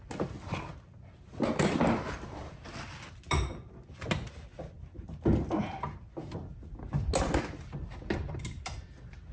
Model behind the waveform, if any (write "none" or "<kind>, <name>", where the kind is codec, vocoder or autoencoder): none